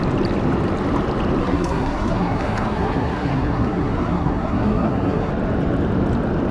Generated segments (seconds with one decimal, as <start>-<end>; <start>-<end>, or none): 1.4-5.3